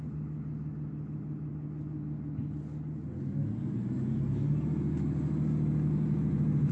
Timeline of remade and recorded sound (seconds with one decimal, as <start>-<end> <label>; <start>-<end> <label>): 0.0-6.7 recorded